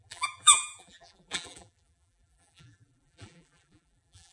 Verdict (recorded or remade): remade